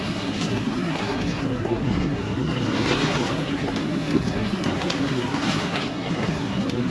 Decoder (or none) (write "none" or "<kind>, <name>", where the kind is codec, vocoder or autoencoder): codec, SNAC